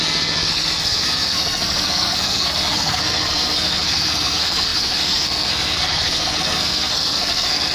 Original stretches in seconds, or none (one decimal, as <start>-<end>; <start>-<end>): none